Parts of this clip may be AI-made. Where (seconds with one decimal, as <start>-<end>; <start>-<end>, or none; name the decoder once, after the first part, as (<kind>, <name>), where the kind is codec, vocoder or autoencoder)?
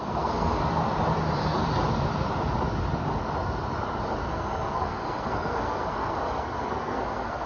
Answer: 0.0-0.6 (codec, SNAC); 4.3-7.5